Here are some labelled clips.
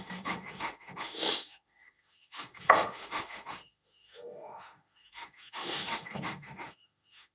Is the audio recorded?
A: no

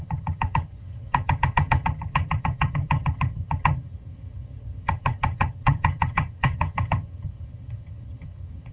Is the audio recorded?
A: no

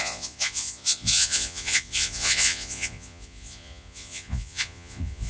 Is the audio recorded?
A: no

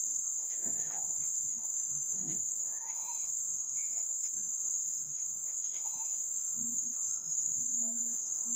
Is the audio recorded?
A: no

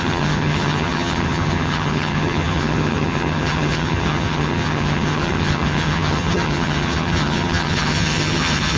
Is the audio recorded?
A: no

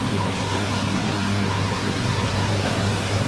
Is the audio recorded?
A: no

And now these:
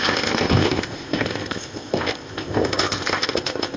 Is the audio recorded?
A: no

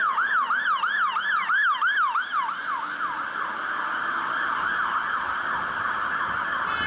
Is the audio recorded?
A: yes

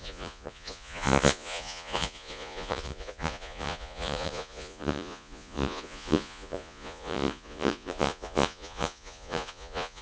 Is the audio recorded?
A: no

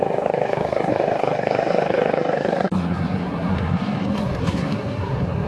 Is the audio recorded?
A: no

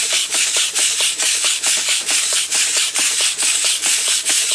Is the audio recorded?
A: no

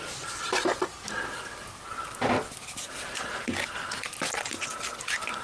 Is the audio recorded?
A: yes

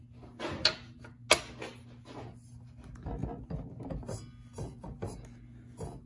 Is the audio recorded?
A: yes